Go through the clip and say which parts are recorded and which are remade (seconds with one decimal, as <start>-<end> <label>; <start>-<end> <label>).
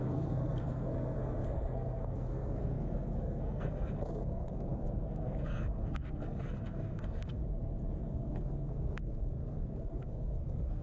0.0-7.4 remade; 7.4-8.0 recorded; 8.0-10.8 remade